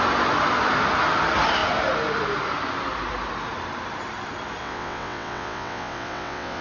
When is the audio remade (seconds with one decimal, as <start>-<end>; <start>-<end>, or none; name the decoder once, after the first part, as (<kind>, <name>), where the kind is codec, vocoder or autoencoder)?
4.6-6.6 (vocoder, WaveNeXt)